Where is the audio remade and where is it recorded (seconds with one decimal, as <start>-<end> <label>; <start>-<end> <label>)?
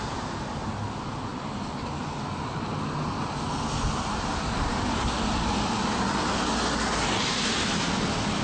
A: 0.0-8.4 recorded